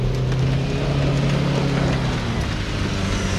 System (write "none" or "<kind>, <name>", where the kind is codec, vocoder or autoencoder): none